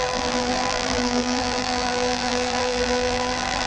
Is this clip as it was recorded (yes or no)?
no